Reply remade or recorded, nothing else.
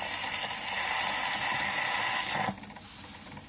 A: recorded